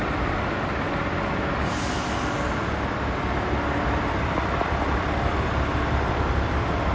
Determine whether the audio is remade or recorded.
recorded